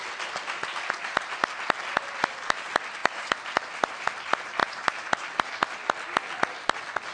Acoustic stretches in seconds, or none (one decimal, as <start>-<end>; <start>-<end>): 0.0-3.0; 4.0-4.6; 5.5-7.1